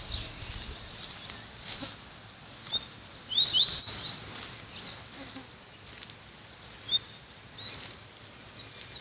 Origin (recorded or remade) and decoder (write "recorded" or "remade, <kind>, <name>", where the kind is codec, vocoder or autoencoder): recorded